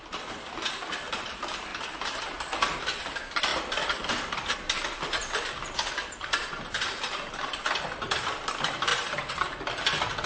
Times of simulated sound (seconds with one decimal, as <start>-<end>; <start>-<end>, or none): 0.0-1.7; 3.0-6.4; 8.5-8.9